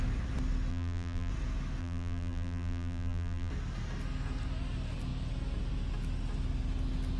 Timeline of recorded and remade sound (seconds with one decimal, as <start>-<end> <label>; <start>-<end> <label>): 0.0-0.7 recorded; 0.7-1.3 remade; 1.3-1.8 recorded; 1.8-3.5 remade; 3.5-7.2 recorded